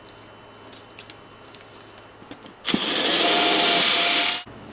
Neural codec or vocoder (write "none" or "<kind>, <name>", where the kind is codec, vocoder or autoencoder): none